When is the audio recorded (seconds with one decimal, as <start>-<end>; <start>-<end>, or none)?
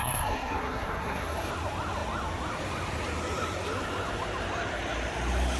1.5-5.6